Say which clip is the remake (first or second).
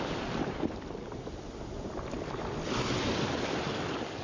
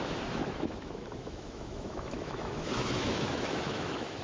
second